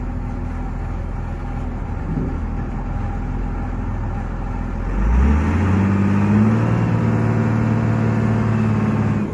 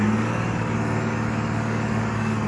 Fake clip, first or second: second